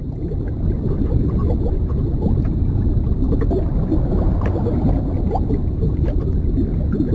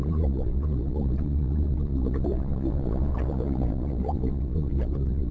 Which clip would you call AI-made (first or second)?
second